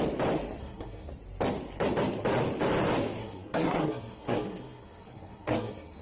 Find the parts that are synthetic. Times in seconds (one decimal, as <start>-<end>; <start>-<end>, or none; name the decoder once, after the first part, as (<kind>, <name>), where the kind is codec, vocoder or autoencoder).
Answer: 0.6-1.1 (codec, SNAC); 3.2-6.0